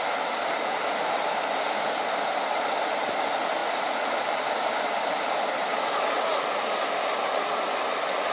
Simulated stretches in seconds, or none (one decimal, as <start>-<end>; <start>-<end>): 3.6-4.1